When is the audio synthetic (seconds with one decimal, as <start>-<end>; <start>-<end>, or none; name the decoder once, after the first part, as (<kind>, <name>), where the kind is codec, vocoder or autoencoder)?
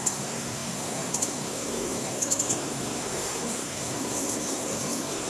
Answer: 0.0-5.3 (codec, SNAC)